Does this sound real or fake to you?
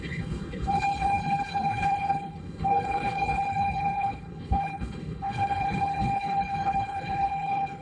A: fake